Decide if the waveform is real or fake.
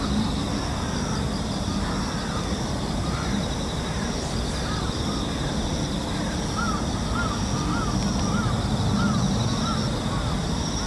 real